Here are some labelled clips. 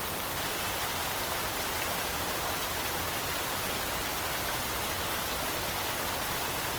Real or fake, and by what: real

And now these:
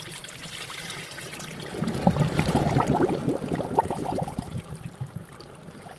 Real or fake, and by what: fake, vocoder, BigVGAN v2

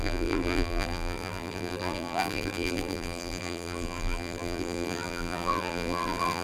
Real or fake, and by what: fake, vocoder, BigVGAN v2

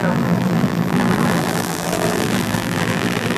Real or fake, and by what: fake, vocoder, BigVGAN v2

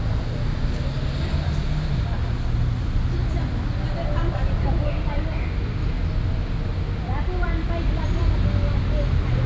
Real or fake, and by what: real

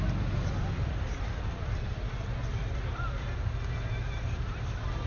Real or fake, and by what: fake, vocoder, BigVGAN v2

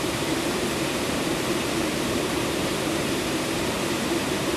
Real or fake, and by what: fake, vocoder, BigVGAN v2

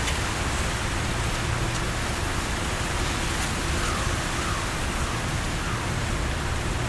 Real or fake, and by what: real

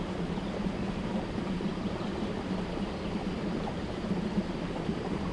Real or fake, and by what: fake, vocoder, BigVGAN v2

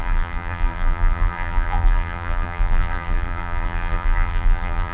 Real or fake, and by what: fake, vocoder, BigVGAN v2